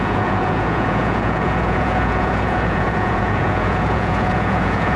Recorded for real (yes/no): no